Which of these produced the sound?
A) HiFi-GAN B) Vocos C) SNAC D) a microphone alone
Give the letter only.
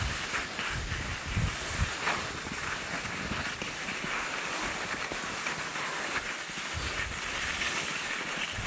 D